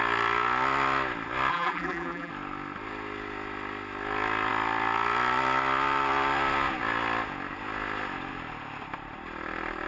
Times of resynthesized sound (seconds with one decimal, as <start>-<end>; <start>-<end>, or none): 1.5-2.3